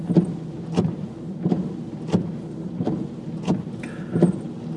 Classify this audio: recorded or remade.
recorded